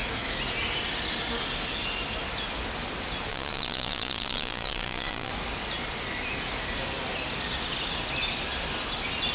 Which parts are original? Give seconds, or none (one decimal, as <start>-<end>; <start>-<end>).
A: 0.0-3.3; 5.3-9.3

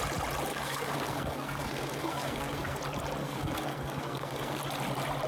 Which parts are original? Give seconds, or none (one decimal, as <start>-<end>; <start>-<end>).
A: 0.0-0.5; 2.8-3.2; 4.6-5.3

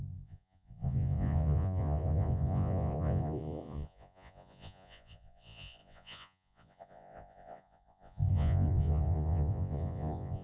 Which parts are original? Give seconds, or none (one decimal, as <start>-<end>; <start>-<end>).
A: none

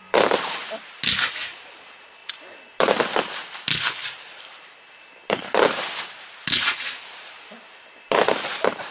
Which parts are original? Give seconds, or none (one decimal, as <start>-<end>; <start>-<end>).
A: 0.6-1.2

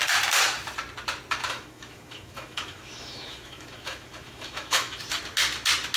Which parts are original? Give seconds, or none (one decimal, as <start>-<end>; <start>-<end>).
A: 0.0-1.4; 5.0-6.0